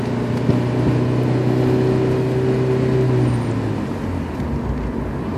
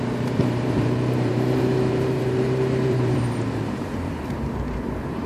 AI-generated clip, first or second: second